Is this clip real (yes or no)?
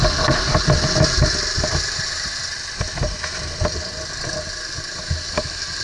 yes